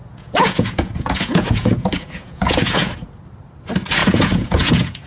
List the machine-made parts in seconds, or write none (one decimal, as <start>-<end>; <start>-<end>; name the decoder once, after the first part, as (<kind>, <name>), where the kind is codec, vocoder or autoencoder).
0.0-3.1 (vocoder, Vocos); 4.0-5.1